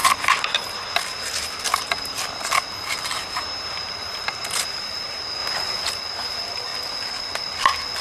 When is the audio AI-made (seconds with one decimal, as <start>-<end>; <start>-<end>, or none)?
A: 0.0-5.4; 5.9-6.7